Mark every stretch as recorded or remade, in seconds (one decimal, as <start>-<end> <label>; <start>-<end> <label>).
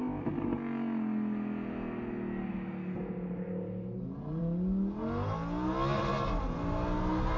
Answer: 0.0-7.4 recorded